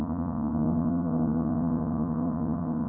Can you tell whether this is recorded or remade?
remade